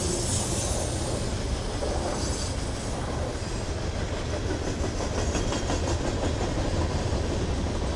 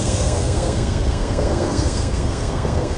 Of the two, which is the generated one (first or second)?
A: second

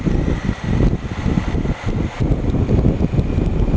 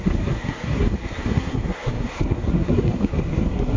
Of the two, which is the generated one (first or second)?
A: second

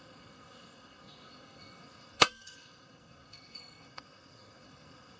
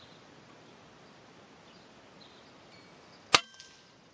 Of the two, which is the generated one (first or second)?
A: first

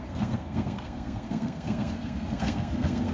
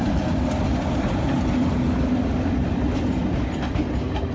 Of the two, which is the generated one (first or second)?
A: first